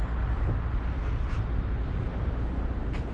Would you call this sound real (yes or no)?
yes